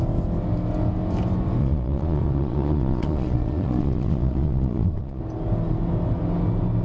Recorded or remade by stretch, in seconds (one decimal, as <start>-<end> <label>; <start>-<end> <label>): 0.0-1.6 recorded; 1.6-5.2 remade; 5.2-6.8 recorded